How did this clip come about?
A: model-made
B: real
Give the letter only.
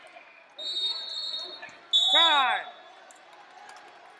B